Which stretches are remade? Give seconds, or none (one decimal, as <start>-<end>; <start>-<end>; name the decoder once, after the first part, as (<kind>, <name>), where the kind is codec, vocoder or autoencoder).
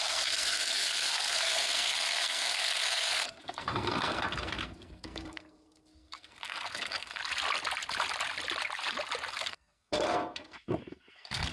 0.0-7.2 (codec, SNAC); 9.3-11.5